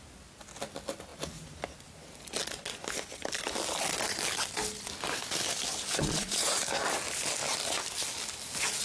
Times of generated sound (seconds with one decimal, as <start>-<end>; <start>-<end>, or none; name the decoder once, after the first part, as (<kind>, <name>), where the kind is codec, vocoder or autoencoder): 6.0-6.6 (vocoder, Vocos)

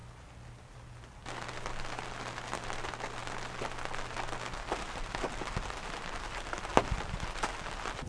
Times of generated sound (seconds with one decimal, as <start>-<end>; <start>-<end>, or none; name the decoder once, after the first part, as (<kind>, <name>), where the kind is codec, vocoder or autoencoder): 6.7-7.4 (vocoder, BigVGAN v2)

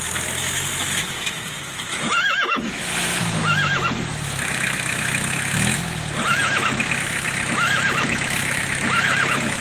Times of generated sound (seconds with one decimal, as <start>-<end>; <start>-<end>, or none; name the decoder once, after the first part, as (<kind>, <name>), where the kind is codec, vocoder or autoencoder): 0.0-9.6 (autoencoder, DAC-VAE)

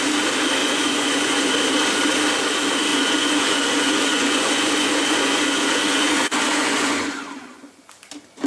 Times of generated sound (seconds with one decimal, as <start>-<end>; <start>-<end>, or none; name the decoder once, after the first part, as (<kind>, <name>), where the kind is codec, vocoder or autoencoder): 0.6-1.5 (vocoder, Vocos); 2.9-7.9

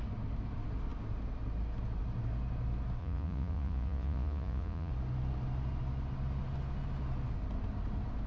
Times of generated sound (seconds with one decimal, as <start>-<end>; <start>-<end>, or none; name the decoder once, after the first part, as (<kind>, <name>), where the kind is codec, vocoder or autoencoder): 3.0-4.9 (vocoder, Vocos)

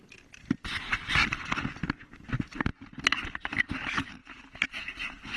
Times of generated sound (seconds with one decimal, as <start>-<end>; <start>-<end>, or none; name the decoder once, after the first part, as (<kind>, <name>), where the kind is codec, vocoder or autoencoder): none

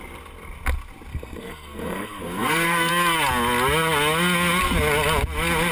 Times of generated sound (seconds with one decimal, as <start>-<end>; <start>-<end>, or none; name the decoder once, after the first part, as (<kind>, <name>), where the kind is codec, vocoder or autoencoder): 1.1-2.9 (codec, SNAC)

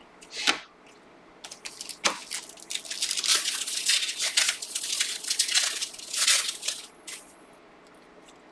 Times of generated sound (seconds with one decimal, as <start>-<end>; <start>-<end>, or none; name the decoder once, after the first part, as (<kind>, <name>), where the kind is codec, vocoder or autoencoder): 3.3-7.5 (vocoder, Vocos)